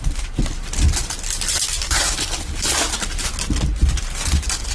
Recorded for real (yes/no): no